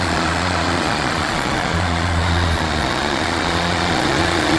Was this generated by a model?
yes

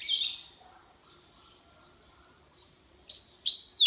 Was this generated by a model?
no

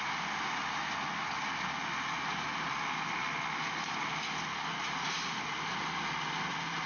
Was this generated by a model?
no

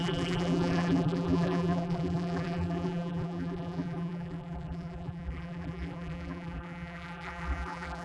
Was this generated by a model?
yes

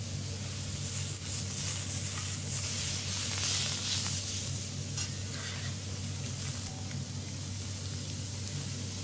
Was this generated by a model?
no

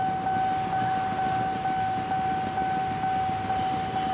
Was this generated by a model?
no